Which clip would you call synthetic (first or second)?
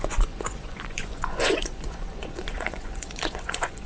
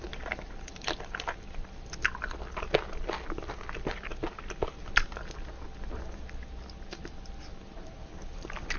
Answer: first